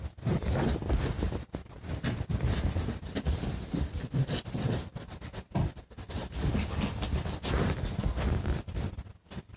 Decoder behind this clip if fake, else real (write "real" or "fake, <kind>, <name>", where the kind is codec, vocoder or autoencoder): real